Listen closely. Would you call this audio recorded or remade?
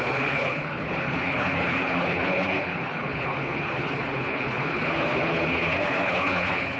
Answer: remade